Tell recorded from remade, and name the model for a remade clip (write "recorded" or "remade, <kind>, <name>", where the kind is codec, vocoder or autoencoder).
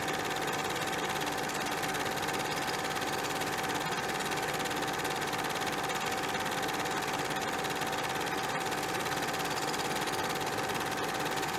recorded